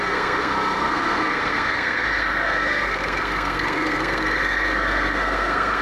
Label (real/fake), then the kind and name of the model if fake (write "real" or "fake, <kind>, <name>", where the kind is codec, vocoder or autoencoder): fake, codec, SNAC